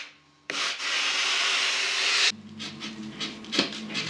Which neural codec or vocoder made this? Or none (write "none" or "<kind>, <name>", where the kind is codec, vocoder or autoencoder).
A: none